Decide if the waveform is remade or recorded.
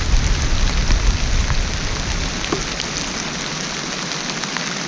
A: recorded